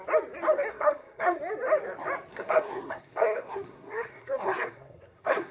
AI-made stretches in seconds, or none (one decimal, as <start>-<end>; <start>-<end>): 0.7-1.4; 2.3-5.5